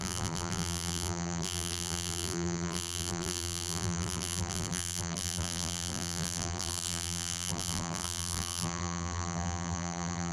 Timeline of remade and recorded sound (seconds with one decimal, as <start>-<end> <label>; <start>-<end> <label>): 0.0-10.3 remade